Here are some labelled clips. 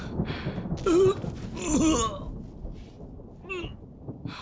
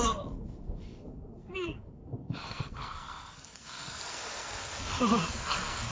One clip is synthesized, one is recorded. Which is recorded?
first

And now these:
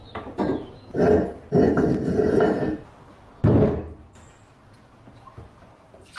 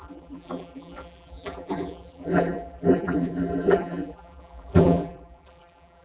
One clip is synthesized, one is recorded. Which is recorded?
first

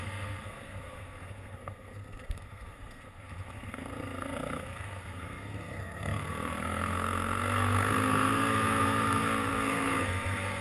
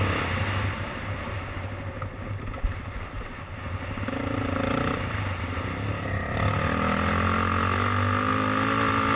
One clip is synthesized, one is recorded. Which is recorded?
second